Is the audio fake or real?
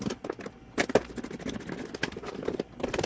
real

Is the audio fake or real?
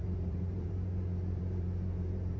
fake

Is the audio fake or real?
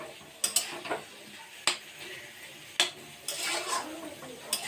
real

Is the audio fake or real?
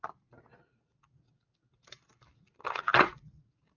real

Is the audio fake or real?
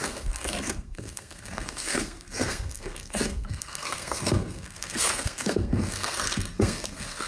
fake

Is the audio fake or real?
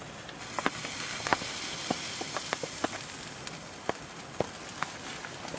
real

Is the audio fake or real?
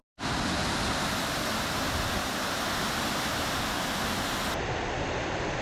real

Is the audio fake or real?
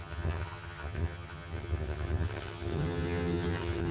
fake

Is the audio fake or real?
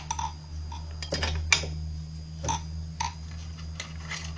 real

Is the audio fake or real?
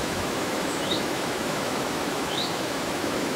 fake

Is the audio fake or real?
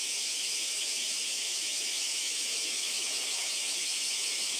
fake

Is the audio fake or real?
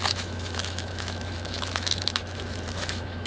fake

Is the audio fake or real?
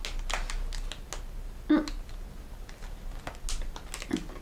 real